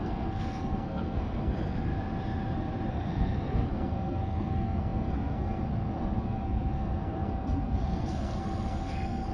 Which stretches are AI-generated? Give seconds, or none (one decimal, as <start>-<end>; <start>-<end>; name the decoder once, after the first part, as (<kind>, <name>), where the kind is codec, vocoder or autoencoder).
0.0-1.9 (codec, SNAC); 2.9-9.3